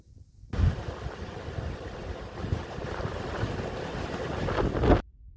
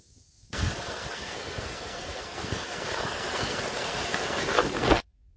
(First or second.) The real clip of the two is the first